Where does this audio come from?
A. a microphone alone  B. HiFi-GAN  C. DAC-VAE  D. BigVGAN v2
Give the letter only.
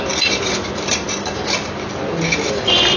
A